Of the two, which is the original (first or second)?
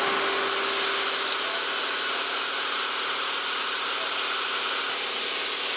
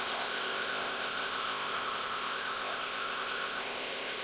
first